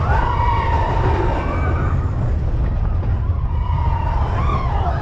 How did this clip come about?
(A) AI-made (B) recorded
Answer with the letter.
B